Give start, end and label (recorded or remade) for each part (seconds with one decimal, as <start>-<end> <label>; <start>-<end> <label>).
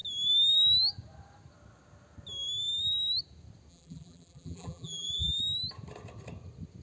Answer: 0.0-3.7 recorded; 3.7-5.4 remade; 5.4-6.8 recorded